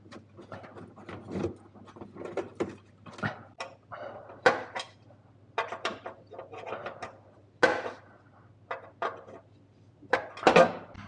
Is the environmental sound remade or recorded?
recorded